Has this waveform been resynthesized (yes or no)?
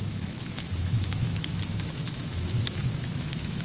yes